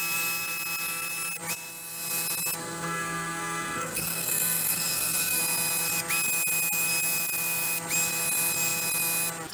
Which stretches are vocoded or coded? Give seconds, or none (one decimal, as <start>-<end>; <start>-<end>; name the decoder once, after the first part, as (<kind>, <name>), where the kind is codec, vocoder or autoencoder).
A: 2.6-5.4 (codec, SNAC)